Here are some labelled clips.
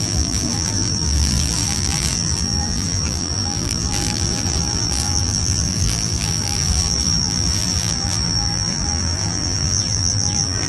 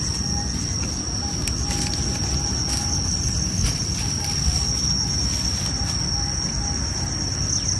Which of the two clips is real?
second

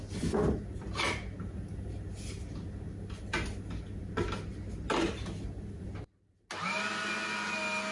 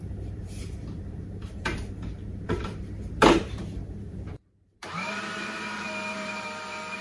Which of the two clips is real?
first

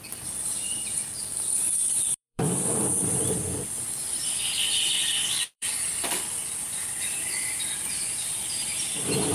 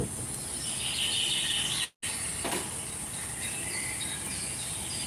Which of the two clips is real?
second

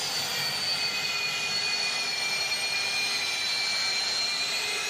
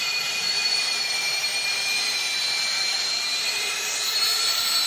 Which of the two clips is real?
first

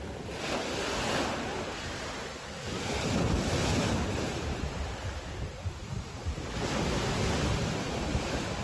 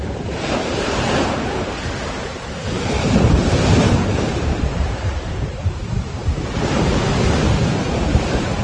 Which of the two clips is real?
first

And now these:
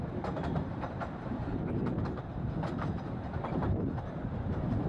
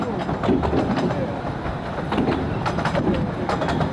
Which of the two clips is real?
second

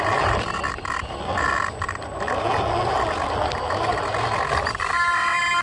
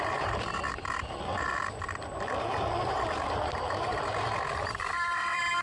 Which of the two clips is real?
first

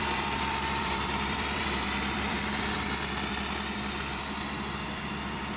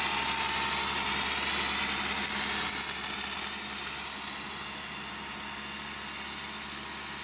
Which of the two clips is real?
second